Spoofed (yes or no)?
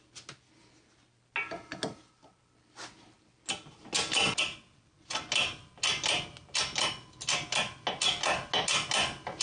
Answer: no